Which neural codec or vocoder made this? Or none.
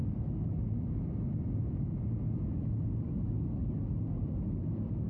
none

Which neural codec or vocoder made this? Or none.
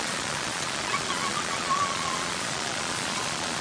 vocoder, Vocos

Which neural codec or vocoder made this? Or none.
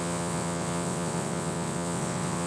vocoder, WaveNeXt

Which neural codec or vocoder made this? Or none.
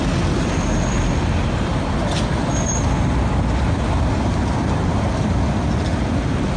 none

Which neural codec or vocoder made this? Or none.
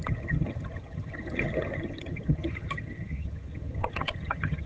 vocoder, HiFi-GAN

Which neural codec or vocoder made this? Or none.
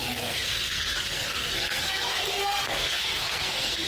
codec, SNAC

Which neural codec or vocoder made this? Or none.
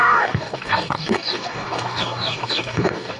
codec, DAC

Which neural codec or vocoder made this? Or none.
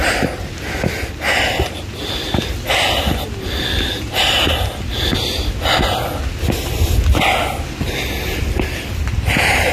none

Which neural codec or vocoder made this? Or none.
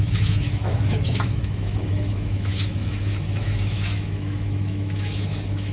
autoencoder, DAC-VAE